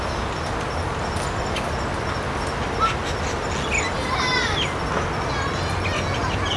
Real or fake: real